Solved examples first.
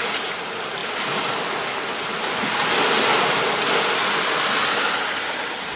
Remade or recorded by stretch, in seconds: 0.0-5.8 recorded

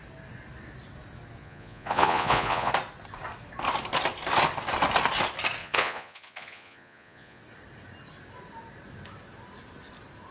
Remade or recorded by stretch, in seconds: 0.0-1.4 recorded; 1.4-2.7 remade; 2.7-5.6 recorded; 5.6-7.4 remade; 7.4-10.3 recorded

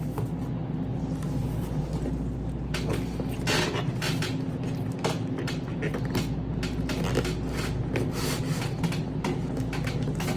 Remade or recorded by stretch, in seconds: 0.0-10.4 recorded

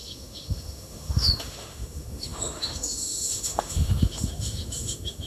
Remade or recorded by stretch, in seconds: 0.0-5.3 remade